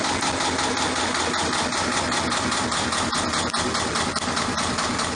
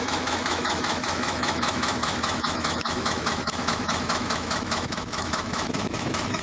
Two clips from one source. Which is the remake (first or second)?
second